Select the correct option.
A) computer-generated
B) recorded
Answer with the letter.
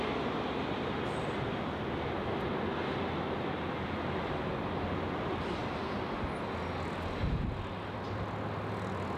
B